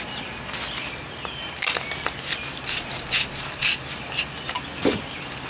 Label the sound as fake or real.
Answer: real